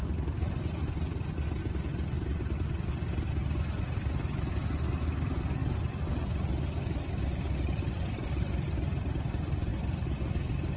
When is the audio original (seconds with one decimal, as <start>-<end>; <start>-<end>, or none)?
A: 0.0-10.8